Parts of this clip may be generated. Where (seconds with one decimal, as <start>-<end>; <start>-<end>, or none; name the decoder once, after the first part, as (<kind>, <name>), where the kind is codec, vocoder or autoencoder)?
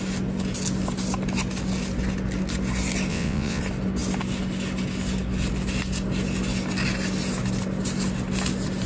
3.1-3.6 (vocoder, WaveNeXt)